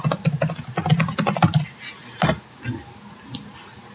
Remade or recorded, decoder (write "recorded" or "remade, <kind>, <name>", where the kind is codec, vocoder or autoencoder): recorded